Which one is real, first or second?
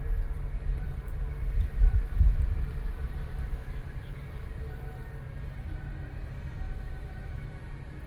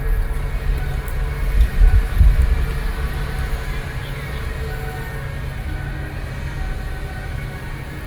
second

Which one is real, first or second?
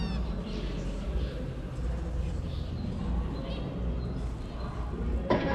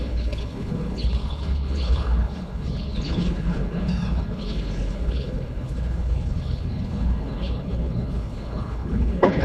first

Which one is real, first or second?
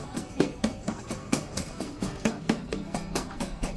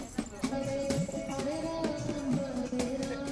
second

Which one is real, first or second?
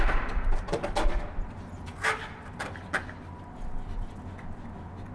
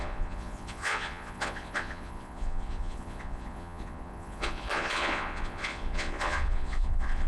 first